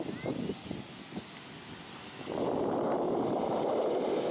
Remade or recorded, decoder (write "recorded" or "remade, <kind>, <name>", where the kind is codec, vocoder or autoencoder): recorded